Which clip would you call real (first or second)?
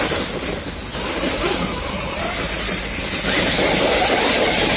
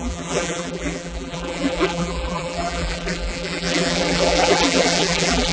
first